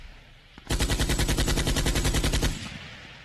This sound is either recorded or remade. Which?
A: recorded